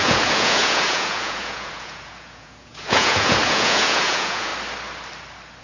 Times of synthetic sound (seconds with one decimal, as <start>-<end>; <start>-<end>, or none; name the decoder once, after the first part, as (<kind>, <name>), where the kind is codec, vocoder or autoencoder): 0.0-4.5 (vocoder, Vocos)